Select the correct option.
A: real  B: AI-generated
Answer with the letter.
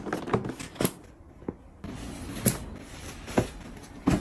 A